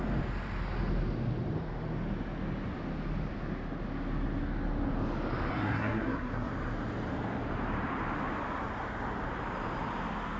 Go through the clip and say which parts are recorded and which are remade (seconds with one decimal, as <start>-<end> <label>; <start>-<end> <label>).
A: 0.0-5.5 recorded; 5.5-6.5 remade; 6.5-10.4 recorded